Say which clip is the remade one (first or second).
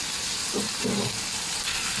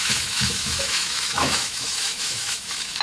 second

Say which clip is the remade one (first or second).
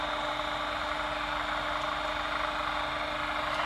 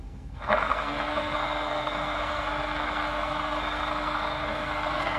second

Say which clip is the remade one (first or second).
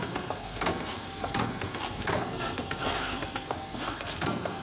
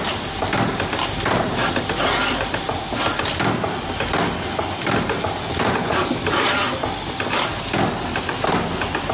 first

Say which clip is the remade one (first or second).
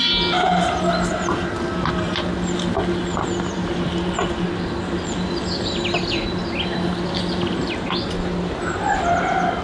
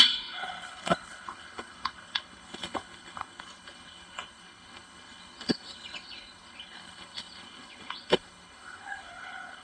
second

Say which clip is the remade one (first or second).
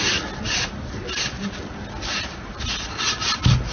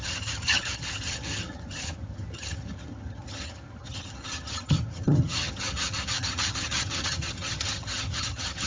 second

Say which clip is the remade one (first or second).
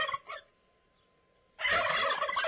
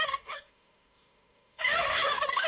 second